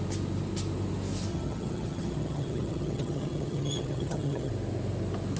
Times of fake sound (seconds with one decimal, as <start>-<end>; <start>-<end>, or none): 1.3-4.5